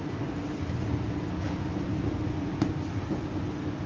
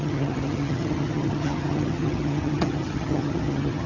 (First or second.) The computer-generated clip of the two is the second